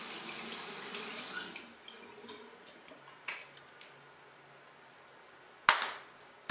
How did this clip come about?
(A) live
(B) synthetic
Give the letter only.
A